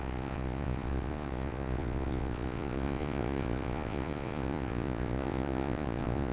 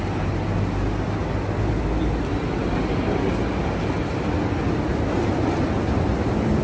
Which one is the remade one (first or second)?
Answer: first